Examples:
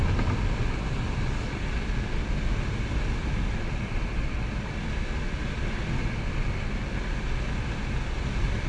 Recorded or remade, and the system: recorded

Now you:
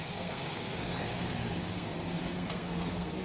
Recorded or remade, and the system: remade, codec, SNAC